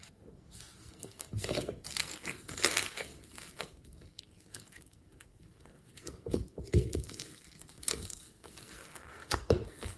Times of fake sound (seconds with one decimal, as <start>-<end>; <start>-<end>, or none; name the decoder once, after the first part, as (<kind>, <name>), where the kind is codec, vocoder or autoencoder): 0.0-10.0 (codec, SNAC)